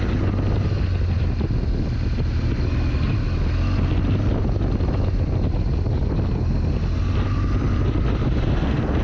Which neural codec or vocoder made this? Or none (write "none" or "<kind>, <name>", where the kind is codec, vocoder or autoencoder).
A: none